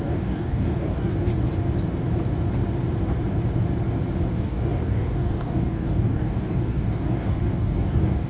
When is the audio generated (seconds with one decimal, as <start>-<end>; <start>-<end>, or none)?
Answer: 0.0-1.3; 4.3-8.3